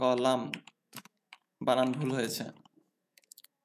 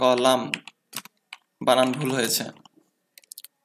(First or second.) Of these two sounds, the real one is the second